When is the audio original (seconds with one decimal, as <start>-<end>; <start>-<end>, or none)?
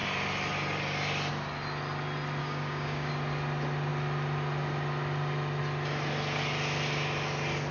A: 0.0-2.4; 3.1-7.7